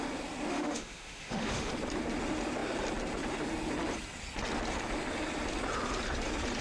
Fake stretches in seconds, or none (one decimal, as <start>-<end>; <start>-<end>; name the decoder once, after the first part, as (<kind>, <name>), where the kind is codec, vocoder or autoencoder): 0.5-1.7 (autoencoder, DAC-VAE)